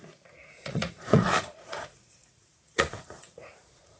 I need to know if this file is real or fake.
fake